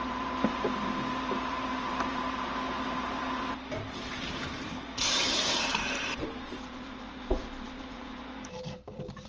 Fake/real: fake